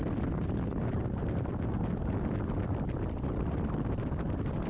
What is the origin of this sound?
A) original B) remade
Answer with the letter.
A